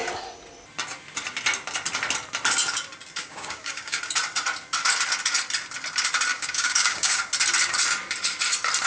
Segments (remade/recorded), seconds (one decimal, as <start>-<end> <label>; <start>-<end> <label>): 0.0-3.2 recorded; 3.2-4.0 remade; 4.0-6.3 recorded; 6.3-7.2 remade; 7.2-8.9 recorded